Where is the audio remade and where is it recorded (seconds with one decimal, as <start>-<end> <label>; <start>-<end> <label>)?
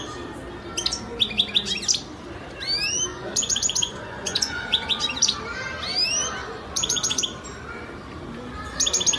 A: 0.0-3.1 recorded; 3.1-5.0 remade; 5.0-6.4 recorded; 6.4-7.2 remade; 7.2-9.2 recorded